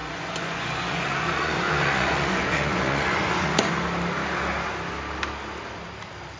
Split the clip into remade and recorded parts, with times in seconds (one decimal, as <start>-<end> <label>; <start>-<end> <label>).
0.0-3.8 remade; 3.8-6.4 recorded